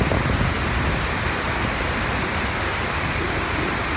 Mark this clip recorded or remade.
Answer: recorded